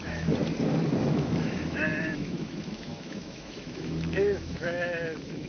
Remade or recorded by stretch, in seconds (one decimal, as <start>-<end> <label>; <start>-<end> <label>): 0.0-0.4 remade; 0.4-1.1 recorded; 1.1-5.5 remade